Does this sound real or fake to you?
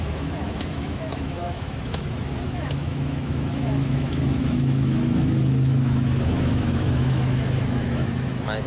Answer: fake